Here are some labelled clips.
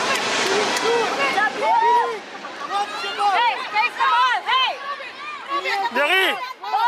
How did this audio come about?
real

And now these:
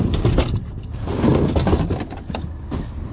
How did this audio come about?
real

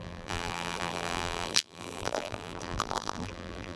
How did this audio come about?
fake